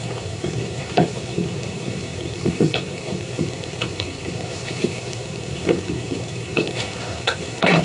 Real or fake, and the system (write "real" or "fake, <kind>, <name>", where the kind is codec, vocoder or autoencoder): fake, codec, SNAC